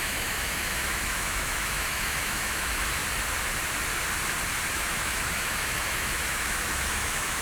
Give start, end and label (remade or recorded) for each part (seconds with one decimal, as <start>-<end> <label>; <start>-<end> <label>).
0.0-3.0 remade; 3.0-4.7 recorded; 4.7-7.4 remade